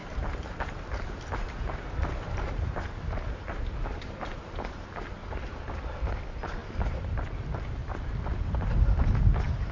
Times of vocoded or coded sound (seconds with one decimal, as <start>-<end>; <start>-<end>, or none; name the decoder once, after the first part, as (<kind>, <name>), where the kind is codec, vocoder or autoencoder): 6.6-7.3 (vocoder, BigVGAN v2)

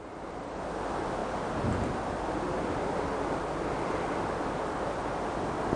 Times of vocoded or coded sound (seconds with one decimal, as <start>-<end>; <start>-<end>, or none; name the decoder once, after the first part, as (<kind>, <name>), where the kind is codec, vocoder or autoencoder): 0.0-5.8 (vocoder, BigVGAN v2)

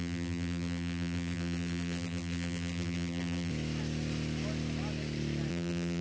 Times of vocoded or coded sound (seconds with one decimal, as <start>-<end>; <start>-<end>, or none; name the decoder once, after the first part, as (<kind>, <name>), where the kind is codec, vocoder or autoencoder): 0.0-3.5 (vocoder, BigVGAN v2); 5.5-6.0

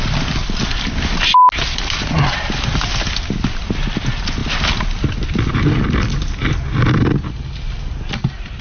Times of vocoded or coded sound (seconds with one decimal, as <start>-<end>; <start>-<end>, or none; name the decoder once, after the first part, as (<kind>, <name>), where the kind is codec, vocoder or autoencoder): none

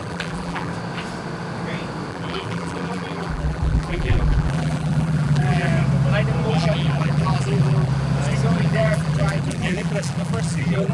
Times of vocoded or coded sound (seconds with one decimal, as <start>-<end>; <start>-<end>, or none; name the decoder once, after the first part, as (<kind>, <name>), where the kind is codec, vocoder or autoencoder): 0.0-0.7 (vocoder, BigVGAN v2); 2.1-5.7; 6.5-7.9; 8.5-10.9

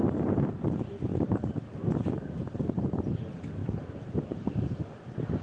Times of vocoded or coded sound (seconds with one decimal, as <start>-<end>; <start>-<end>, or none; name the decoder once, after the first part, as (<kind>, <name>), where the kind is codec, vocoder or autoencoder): 1.1-3.2 (vocoder, BigVGAN v2); 3.6-4.5

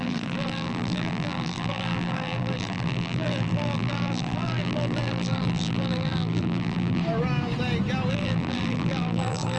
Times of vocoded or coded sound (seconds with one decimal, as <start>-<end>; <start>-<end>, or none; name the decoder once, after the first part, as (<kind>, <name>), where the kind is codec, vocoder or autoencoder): 0.0-7.0 (vocoder, BigVGAN v2); 8.1-9.6